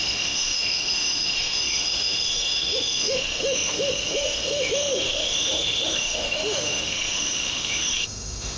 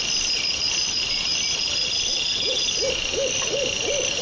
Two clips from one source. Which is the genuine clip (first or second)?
second